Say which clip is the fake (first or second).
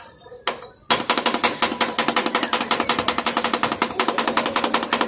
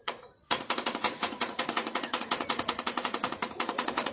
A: second